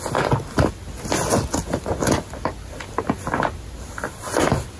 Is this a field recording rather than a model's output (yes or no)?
yes